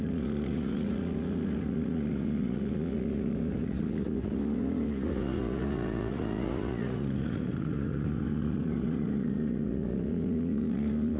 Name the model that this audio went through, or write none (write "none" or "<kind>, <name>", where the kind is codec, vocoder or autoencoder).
vocoder, Vocos